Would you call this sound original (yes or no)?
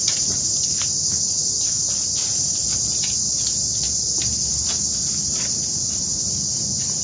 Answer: yes